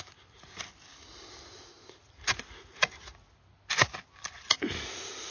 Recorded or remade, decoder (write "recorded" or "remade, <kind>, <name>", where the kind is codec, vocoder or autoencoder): recorded